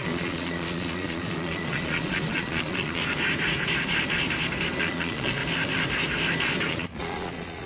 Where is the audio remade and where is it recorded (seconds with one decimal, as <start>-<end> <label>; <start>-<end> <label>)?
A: 0.0-3.0 remade; 3.0-4.8 recorded; 4.8-5.4 remade; 5.4-6.7 recorded; 6.7-7.7 remade